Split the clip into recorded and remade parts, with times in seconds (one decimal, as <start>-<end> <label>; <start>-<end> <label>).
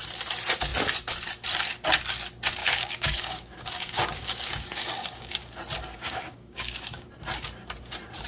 0.0-2.6 recorded; 2.6-5.5 remade; 5.5-5.9 recorded; 5.9-7.1 remade; 7.1-8.3 recorded